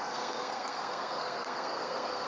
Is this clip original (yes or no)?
no